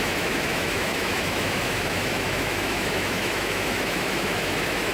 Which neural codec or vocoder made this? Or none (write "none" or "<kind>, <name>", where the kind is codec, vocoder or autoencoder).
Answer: autoencoder, DAC-VAE